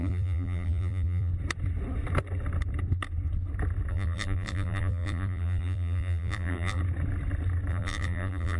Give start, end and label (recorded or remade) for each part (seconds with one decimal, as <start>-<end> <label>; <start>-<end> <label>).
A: 0.0-1.3 remade; 1.3-3.9 recorded; 3.9-6.8 remade; 6.8-7.7 recorded; 7.7-8.6 remade